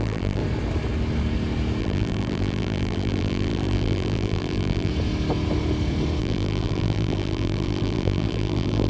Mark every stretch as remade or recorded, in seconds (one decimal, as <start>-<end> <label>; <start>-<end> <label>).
0.0-0.4 remade; 0.4-1.8 recorded; 1.8-4.9 remade; 4.9-6.2 recorded; 6.2-8.9 remade